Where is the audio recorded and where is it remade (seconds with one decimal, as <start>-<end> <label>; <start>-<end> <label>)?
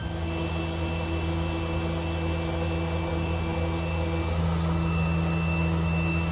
0.0-6.3 recorded